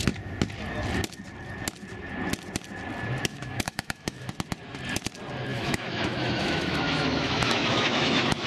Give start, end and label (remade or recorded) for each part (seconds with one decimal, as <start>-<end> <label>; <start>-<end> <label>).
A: 0.0-3.3 recorded; 3.3-4.3 remade; 4.3-5.5 recorded; 5.5-8.5 remade